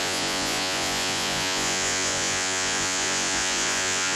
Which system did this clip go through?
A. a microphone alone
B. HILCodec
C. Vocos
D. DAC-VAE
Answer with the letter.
C